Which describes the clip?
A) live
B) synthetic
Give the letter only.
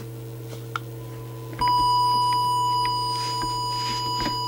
A